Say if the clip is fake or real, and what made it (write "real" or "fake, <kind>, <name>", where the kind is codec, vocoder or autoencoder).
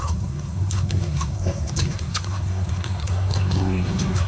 fake, codec, SNAC